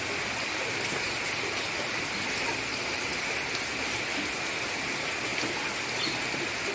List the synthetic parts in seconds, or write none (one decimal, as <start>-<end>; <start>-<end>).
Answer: none